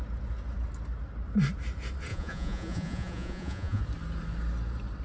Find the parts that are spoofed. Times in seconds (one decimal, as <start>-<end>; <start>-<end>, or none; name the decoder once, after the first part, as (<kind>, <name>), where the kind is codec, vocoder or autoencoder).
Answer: 2.1-3.8 (vocoder, Vocos)